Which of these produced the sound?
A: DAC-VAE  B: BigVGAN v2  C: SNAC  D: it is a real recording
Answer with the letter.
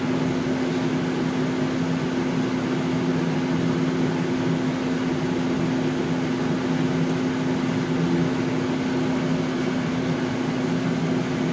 D